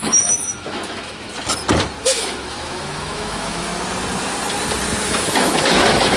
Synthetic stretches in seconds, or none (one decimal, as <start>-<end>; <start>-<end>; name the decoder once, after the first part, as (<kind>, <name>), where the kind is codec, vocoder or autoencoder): 0.0-1.3 (autoencoder, DAC-VAE); 2.1-3.7; 5.0-6.2